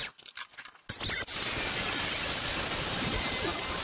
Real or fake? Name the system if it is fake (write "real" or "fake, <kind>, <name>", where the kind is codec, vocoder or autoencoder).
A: real